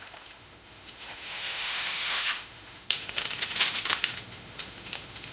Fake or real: fake